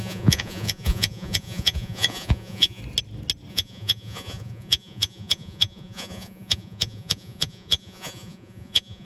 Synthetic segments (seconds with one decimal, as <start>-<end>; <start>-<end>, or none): 0.0-2.8; 3.5-9.0